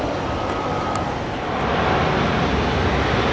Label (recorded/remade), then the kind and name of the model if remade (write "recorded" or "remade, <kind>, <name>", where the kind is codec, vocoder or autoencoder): recorded